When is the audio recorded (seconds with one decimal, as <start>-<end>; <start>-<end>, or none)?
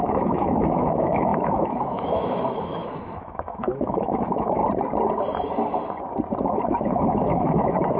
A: 4.6-6.4